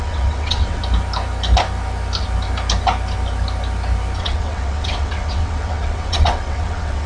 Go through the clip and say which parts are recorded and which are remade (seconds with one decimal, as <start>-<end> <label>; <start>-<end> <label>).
0.0-0.8 remade; 0.8-4.2 recorded; 4.2-7.1 remade